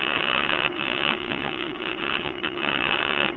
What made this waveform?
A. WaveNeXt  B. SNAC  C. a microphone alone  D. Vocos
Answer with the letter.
A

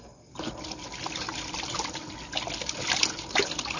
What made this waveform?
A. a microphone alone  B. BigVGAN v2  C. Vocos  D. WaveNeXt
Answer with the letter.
A